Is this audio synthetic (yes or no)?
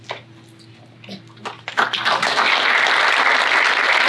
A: no